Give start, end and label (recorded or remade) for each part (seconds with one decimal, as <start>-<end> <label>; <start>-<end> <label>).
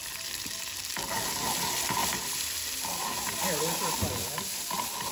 0.0-2.0 recorded; 2.0-5.1 remade